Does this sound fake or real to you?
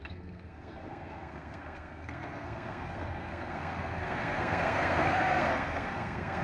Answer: fake